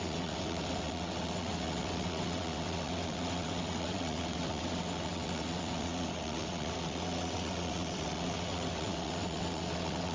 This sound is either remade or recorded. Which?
remade